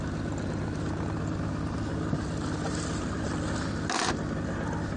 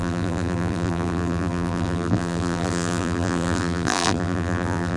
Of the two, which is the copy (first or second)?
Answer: second